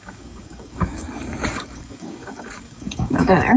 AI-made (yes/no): yes